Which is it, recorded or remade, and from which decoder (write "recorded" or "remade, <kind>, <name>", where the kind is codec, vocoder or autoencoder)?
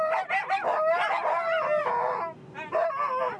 recorded